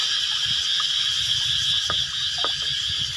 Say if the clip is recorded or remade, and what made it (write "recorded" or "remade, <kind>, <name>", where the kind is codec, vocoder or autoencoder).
recorded